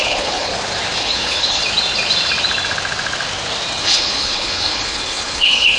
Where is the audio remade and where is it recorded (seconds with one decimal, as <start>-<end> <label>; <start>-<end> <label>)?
0.0-0.5 remade; 0.5-1.0 recorded; 1.0-1.6 remade; 1.6-3.8 recorded; 3.8-5.8 remade